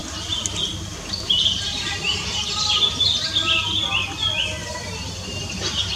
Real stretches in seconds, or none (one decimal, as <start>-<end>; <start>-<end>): 0.0-4.6; 5.3-6.0